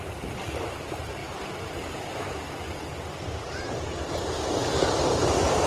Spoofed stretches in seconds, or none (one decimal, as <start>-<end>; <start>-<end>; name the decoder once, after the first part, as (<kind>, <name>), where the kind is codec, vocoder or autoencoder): 0.0-1.2 (vocoder, BigVGAN v2); 3.2-4.6; 5.1-5.7